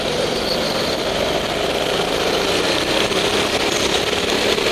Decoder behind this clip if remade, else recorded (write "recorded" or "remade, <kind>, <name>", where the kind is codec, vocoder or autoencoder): remade, vocoder, BigVGAN v2